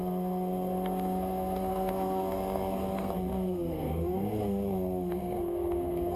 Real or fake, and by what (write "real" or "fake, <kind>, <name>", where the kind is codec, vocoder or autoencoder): fake, codec, SNAC